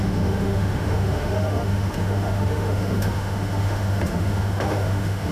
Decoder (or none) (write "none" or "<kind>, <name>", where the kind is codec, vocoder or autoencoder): autoencoder, DAC-VAE